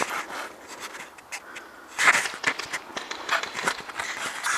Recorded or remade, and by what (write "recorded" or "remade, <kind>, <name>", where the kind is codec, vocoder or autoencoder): recorded